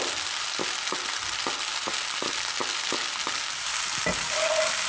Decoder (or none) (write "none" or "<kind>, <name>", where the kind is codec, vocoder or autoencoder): none